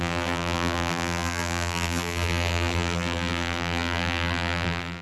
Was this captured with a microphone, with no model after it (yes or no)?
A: no